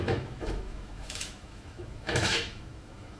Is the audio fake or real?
fake